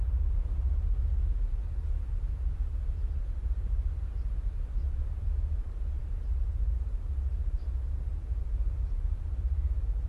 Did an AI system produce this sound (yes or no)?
yes